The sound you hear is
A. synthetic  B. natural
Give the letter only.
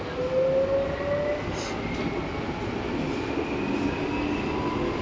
B